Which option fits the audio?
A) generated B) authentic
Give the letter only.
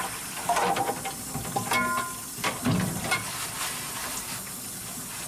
B